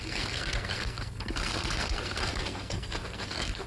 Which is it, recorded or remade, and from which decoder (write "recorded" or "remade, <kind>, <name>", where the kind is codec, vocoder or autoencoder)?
remade, codec, SNAC